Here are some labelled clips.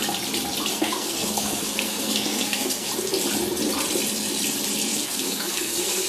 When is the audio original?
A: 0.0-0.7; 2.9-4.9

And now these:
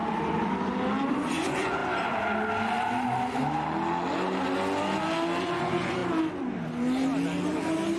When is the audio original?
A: 0.0-1.1; 1.8-5.4; 6.0-8.0